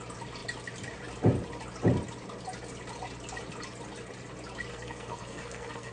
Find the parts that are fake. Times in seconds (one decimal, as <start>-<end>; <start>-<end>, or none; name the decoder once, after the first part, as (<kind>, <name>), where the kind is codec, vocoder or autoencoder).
4.7-5.9 (codec, SNAC)